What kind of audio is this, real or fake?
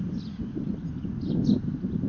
real